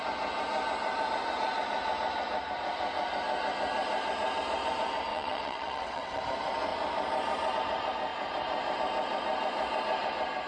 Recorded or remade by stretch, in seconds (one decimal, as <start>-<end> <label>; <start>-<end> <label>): 0.0-5.1 recorded; 5.1-6.2 remade; 6.2-10.5 recorded

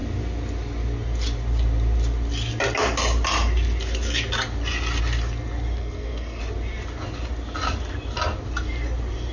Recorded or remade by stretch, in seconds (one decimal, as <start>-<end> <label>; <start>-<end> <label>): 0.0-5.8 recorded; 5.8-6.4 remade; 6.4-9.3 recorded

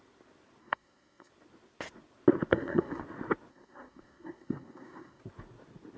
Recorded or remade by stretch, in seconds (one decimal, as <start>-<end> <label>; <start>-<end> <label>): 0.0-0.6 recorded; 0.6-1.3 remade; 1.3-2.5 recorded; 2.5-3.0 remade; 3.0-3.5 recorded; 3.5-5.2 remade; 5.2-6.0 recorded

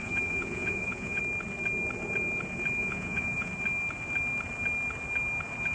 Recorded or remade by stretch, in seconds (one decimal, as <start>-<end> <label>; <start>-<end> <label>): 0.0-1.2 remade; 1.2-2.8 recorded; 2.8-3.5 remade; 3.5-5.7 recorded

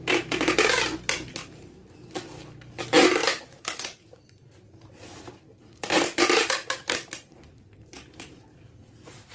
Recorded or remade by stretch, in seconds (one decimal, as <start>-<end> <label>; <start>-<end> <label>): 0.0-3.2 recorded; 3.2-8.4 remade; 8.4-9.3 recorded